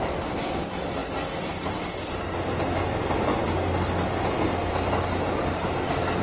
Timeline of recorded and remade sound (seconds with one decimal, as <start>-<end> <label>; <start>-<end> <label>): 0.0-6.2 recorded